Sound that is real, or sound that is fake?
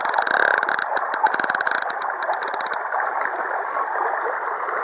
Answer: real